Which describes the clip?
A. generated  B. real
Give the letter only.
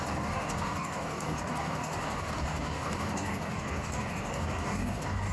A